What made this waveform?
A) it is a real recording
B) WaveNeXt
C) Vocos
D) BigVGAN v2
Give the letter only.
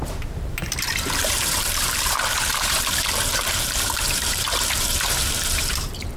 D